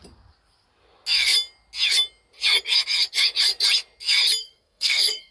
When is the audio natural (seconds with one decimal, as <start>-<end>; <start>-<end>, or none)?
0.0-4.4